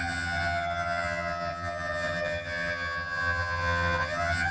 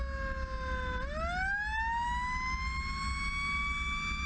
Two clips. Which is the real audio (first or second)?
second